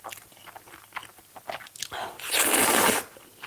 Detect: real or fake real